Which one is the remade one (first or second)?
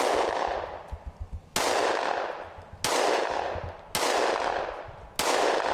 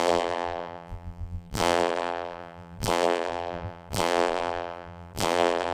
second